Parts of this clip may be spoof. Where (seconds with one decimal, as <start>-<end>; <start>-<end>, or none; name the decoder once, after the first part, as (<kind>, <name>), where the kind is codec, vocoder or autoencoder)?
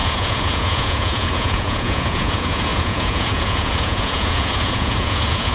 0.0-5.5 (vocoder, Vocos)